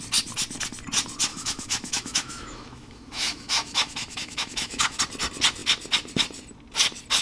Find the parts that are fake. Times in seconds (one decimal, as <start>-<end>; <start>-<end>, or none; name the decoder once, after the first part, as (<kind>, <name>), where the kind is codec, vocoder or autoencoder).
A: 1.3-5.0 (autoencoder, DAC-VAE)

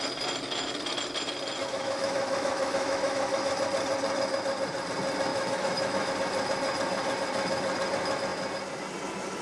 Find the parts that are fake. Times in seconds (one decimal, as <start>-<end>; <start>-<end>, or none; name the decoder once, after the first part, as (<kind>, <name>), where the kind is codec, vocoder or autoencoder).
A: 1.6-3.5 (autoencoder, DAC-VAE); 5.3-6.1

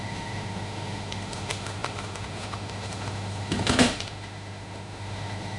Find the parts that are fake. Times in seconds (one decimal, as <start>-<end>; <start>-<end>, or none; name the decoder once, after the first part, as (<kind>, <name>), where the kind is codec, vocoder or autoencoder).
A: 0.0-5.6 (autoencoder, DAC-VAE)

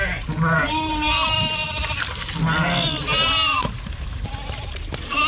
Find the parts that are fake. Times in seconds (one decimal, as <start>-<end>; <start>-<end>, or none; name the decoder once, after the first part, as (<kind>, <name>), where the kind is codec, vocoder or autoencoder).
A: none

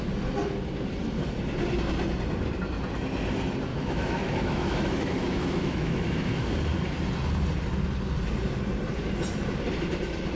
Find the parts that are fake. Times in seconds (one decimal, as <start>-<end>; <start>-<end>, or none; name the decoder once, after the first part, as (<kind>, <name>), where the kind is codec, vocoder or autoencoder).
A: 3.7-6.5 (autoencoder, DAC-VAE)

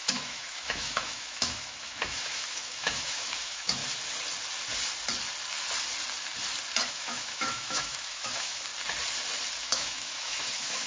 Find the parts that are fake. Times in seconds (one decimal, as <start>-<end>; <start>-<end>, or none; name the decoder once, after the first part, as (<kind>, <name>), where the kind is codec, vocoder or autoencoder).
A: 0.0-3.8 (autoencoder, DAC-VAE); 6.9-8.7; 9.6-10.9

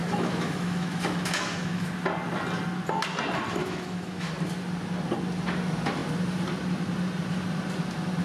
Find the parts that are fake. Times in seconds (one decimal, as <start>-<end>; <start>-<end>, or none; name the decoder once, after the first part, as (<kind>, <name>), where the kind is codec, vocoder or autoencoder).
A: 0.0-1.9 (autoencoder, DAC-VAE); 3.6-4.3

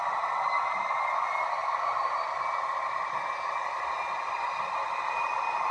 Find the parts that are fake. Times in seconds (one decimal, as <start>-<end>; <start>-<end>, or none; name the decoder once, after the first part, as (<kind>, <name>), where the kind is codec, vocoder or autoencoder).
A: none